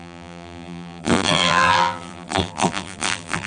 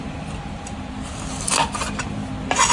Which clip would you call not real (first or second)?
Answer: first